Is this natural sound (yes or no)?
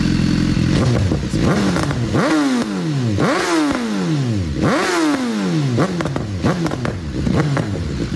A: yes